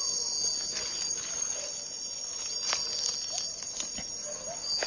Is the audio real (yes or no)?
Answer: yes